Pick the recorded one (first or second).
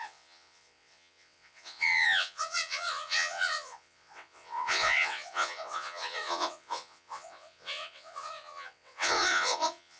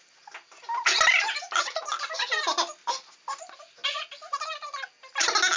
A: second